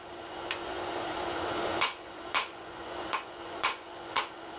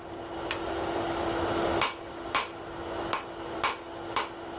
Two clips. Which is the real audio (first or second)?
second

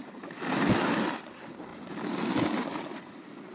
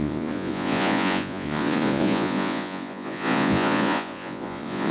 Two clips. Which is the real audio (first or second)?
first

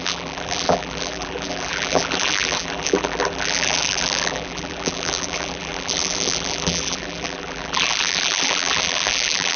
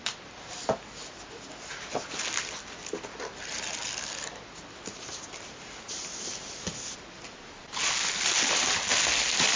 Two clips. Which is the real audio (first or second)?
second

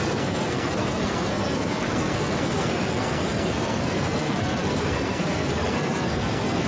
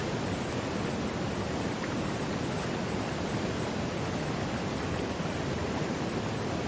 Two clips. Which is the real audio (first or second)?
second